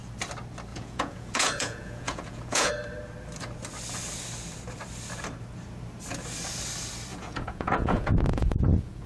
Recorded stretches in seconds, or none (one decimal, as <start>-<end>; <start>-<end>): 0.0-0.7; 2.7-7.1